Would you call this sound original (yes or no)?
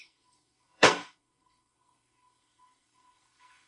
no